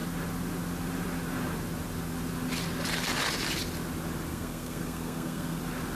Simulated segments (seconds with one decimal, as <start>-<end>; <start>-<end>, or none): 4.3-5.6